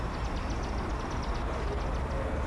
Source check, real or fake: real